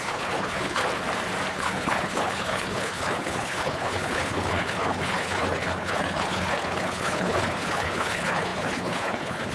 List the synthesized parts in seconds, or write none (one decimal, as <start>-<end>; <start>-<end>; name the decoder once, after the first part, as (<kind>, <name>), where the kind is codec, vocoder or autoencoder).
0.0-0.8 (codec, HILCodec); 1.5-9.5